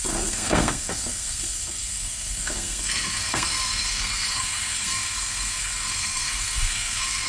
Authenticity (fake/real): fake